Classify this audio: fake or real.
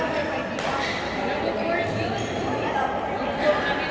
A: real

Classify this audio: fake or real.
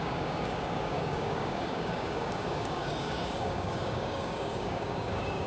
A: fake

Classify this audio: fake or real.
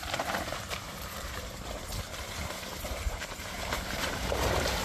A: fake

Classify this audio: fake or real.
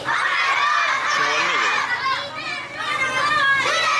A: real